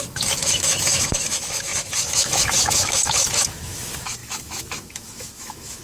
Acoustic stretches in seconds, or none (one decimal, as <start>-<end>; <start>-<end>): none